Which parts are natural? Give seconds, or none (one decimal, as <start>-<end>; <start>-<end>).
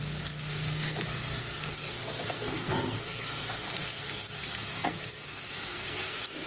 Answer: none